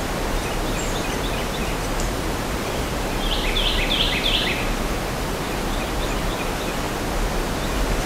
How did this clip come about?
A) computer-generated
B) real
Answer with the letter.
B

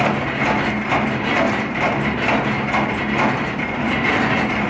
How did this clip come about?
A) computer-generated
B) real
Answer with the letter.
B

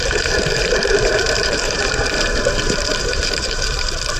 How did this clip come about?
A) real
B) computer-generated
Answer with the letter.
B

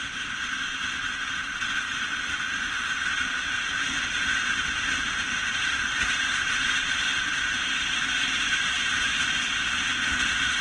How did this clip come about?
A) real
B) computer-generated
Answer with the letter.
B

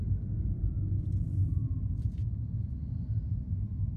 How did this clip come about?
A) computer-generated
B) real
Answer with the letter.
B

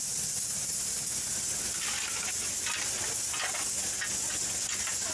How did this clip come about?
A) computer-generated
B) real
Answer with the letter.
B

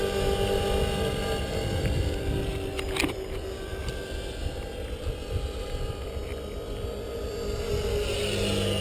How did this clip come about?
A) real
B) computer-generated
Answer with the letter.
A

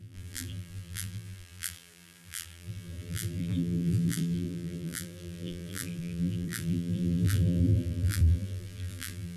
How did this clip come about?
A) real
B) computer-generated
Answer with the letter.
B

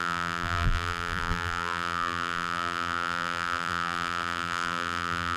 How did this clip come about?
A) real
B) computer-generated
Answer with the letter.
B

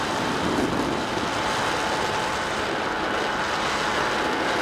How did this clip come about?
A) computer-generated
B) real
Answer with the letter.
B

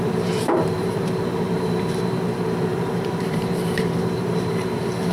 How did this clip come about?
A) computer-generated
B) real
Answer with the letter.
A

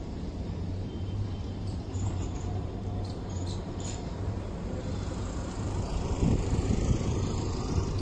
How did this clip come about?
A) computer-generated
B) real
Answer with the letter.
A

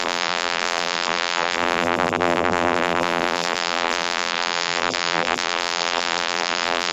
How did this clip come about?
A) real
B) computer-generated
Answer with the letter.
B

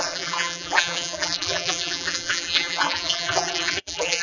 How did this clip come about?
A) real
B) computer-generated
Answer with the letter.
B